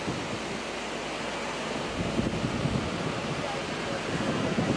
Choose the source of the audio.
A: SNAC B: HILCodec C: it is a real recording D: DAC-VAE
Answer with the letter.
C